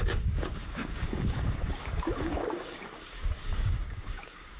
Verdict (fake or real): fake